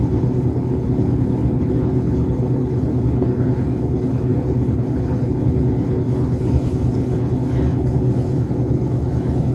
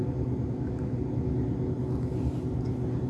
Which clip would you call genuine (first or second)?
second